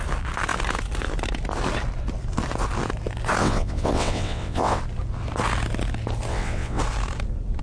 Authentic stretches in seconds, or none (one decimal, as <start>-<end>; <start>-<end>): 0.0-3.4; 4.8-6.3; 6.8-7.6

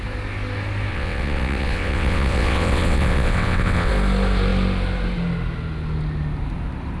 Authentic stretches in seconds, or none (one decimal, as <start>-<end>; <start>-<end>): 0.0-0.9; 3.9-7.0